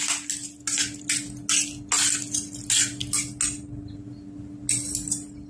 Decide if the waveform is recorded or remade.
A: recorded